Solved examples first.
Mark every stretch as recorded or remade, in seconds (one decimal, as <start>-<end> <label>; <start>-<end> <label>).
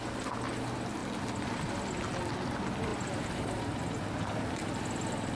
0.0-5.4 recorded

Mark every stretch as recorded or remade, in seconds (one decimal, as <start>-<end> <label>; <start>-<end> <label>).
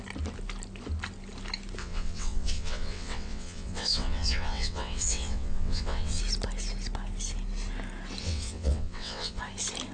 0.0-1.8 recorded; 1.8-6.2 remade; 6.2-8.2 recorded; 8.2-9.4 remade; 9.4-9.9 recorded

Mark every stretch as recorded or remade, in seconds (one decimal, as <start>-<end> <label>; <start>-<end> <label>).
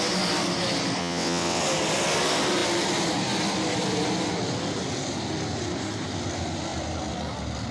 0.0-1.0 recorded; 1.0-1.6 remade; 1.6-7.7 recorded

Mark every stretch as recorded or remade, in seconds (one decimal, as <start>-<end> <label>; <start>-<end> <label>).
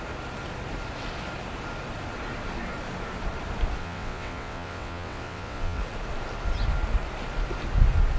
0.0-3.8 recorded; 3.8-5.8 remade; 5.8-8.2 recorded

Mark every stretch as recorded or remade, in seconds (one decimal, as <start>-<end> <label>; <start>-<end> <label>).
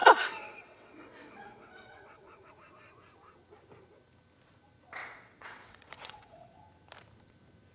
0.0-2.5 remade; 2.5-5.0 recorded; 5.0-6.5 remade; 6.5-7.7 recorded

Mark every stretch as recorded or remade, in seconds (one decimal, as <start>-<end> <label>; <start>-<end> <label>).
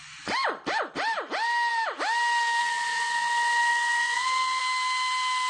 0.0-2.6 recorded; 2.6-4.6 remade; 4.6-5.5 recorded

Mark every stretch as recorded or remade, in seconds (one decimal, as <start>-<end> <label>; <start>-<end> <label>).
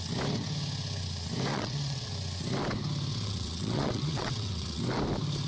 0.0-1.5 recorded; 1.5-2.1 remade; 2.1-3.1 recorded; 3.1-4.8 remade; 4.8-5.5 recorded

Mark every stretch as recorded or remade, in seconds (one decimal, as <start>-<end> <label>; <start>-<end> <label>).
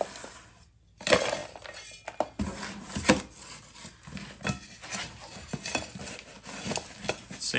0.0-7.6 recorded